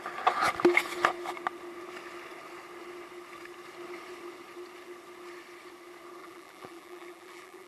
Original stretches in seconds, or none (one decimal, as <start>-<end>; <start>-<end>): 0.0-6.2